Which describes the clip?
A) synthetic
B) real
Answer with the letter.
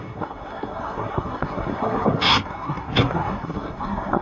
A